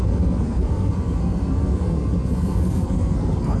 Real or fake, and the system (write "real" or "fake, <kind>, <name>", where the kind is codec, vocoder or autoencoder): fake, codec, SNAC